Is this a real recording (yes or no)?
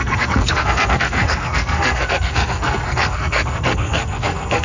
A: no